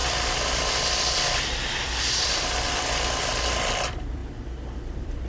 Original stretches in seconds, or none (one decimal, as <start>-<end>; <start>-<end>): none